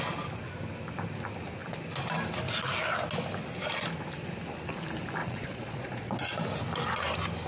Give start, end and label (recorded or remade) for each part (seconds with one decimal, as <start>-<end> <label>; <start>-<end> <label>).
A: 0.0-5.2 recorded; 5.2-6.2 remade; 6.2-7.5 recorded